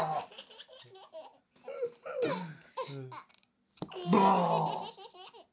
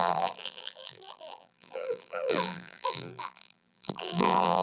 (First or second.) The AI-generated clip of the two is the second